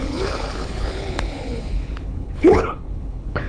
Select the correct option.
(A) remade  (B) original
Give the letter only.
A